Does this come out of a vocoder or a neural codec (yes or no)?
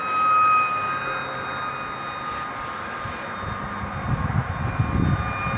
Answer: no